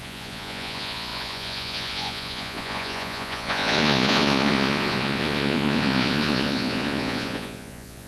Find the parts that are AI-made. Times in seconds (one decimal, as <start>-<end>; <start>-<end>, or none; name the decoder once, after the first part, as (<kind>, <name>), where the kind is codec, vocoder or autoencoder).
0.0-8.1 (vocoder, Vocos)